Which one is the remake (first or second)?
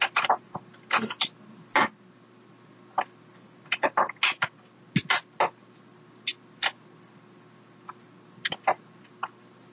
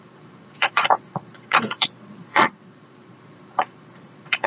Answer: second